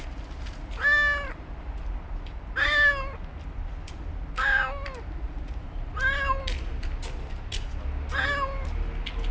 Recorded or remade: recorded